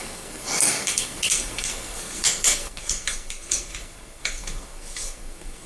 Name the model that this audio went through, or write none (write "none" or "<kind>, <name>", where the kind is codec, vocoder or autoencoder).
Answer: codec, SNAC